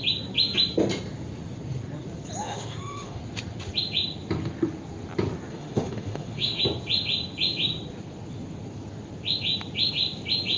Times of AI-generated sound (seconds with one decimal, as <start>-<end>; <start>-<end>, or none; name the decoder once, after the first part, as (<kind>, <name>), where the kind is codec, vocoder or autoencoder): 2.4-3.2 (autoencoder, DAC-VAE); 5.5-6.6